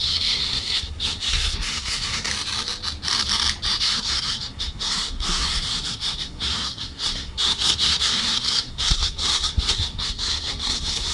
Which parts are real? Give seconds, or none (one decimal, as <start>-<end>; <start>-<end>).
2.3-3.8